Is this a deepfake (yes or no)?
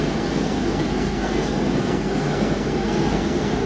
yes